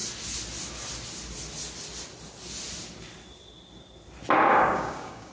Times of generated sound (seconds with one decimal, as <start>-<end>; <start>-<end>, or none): 4.5-5.3